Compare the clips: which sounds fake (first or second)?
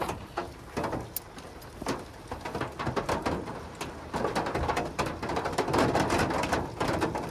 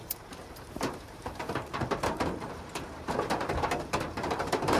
second